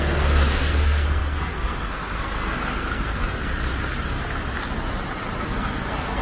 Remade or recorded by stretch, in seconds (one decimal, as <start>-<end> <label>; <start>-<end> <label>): 0.0-3.7 remade; 3.7-5.4 recorded; 5.4-6.2 remade